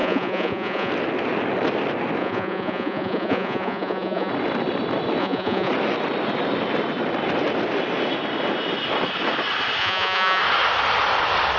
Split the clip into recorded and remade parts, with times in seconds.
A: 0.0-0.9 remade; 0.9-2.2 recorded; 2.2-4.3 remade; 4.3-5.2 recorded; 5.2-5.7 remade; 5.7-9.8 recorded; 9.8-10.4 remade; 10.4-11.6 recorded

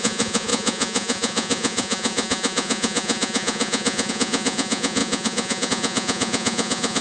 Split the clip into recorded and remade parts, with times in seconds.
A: 0.0-7.0 remade

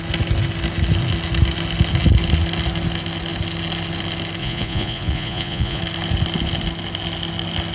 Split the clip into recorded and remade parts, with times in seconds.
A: 0.0-4.4 recorded; 4.4-5.8 remade; 5.8-7.7 recorded